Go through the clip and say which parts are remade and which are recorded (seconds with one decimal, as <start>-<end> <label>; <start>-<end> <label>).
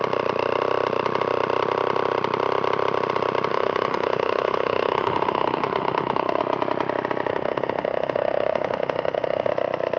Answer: 0.0-3.5 recorded; 3.5-6.4 remade; 6.4-7.3 recorded; 7.3-9.5 remade; 9.5-10.0 recorded